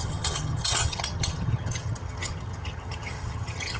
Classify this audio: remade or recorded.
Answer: remade